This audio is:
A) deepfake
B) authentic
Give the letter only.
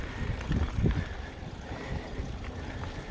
A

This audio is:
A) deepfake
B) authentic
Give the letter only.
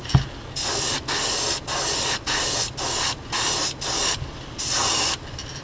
B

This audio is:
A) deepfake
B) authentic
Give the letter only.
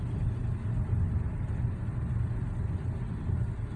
B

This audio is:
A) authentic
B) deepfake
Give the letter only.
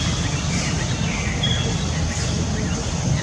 A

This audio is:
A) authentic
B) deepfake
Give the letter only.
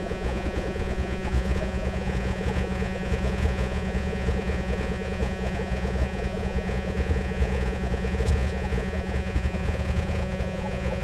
B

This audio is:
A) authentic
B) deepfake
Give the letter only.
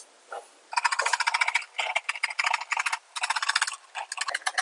A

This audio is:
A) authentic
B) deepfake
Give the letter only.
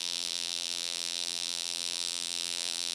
B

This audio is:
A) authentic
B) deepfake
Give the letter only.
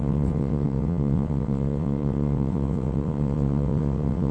B